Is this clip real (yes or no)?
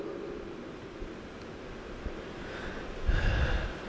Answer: yes